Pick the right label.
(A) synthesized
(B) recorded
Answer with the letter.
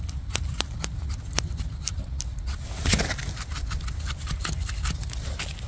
B